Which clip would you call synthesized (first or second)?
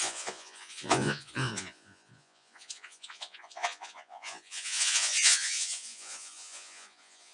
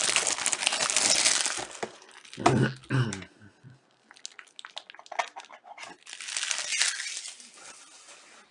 first